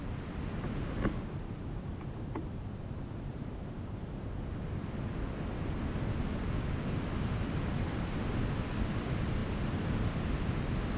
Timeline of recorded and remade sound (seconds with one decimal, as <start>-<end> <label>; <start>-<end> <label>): 0.0-11.0 recorded